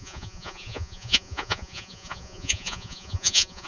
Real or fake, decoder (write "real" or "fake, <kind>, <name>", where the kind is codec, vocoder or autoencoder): fake, vocoder, Vocos